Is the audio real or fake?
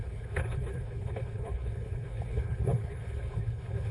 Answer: fake